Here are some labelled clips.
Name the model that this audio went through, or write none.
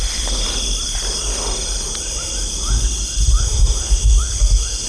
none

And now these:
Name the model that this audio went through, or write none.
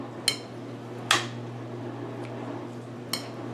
none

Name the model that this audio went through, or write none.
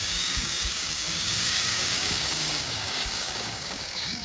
codec, DAC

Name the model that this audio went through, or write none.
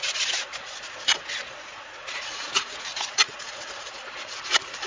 vocoder, Vocos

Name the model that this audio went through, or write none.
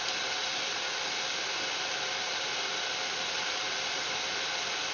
none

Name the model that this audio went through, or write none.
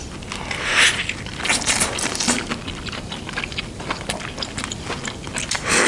none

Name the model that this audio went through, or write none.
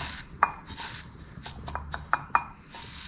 none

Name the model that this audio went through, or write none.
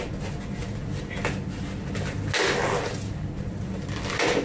none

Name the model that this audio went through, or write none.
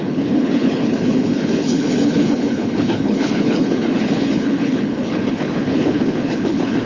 codec, HILCodec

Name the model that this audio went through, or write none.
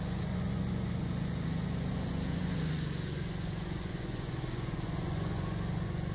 vocoder, Vocos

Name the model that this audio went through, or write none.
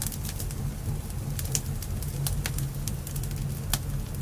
none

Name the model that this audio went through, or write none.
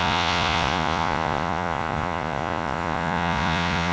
vocoder, Vocos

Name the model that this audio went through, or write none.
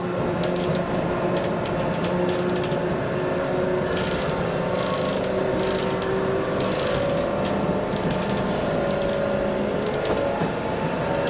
none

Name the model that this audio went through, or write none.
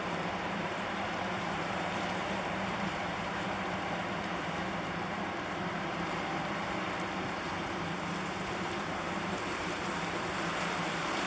vocoder, BigVGAN v2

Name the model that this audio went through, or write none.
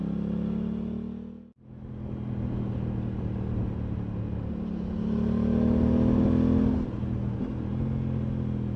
none